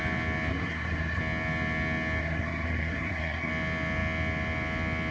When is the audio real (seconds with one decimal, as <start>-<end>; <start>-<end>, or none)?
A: 0.0-0.5; 1.2-2.2; 3.5-5.1